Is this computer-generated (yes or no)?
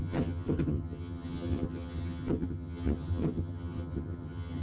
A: yes